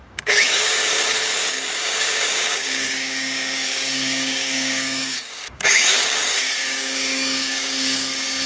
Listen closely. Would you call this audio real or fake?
fake